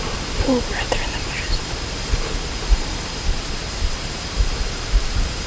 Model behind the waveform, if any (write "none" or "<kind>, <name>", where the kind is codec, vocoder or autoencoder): vocoder, BigVGAN v2